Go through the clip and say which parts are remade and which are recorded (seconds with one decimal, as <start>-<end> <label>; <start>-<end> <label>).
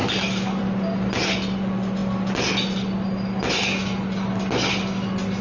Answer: 0.0-5.4 recorded